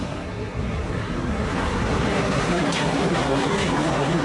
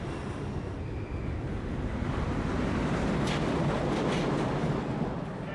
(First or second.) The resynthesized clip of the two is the first